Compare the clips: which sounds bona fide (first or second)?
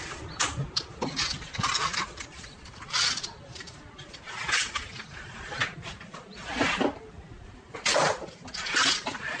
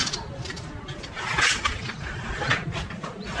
second